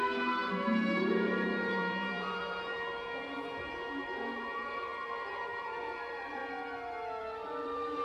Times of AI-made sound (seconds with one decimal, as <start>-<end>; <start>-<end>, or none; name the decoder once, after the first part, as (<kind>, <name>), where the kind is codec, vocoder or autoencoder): 0.0-6.4 (vocoder, BigVGAN v2); 7.2-8.0